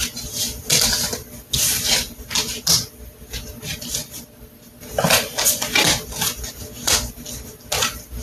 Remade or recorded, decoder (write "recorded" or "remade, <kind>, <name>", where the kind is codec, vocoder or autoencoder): recorded